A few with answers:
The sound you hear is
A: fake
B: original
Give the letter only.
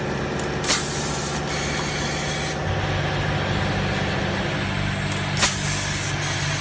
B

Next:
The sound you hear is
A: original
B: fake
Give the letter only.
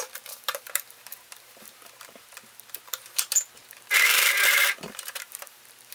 B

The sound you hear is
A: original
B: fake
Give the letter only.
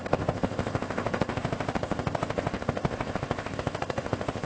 B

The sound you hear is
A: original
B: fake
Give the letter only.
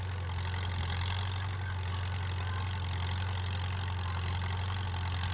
A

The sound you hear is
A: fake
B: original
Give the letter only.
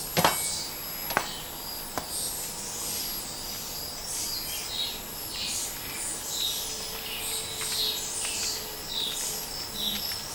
B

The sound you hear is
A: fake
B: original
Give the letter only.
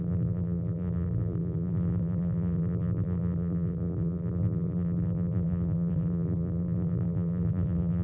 A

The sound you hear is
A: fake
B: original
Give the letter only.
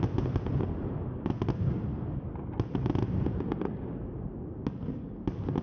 B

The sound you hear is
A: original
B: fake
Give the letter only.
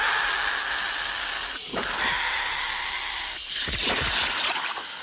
A